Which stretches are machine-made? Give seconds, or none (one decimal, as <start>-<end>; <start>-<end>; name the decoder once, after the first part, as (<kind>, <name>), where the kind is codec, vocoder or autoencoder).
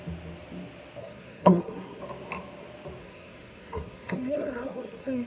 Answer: 1.0-2.0 (codec, SNAC); 3.0-5.3